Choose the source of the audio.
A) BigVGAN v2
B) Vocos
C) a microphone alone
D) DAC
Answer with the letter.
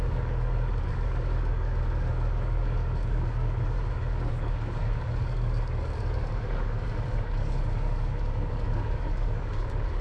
D